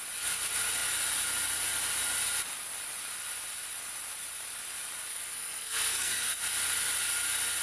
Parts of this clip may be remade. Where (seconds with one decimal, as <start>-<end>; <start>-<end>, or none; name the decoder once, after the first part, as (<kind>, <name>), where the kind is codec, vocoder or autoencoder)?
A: 5.1-6.4 (codec, SNAC)